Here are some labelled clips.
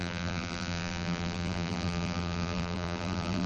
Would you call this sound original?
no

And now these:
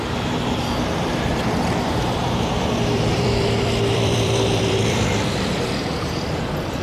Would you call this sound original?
no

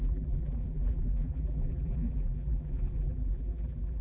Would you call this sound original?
no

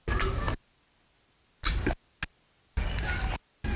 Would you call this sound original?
yes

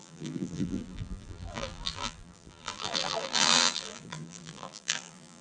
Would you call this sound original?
no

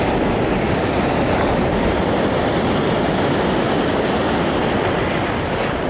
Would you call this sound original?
yes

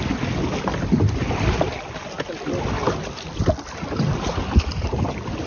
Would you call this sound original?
yes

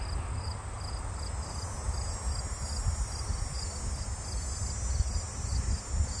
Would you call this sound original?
yes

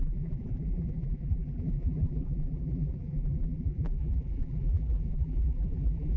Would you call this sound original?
no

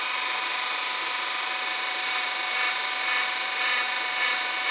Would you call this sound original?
no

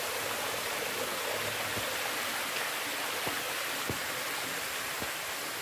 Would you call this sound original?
yes